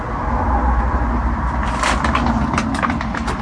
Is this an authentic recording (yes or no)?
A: yes